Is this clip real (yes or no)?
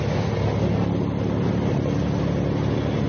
yes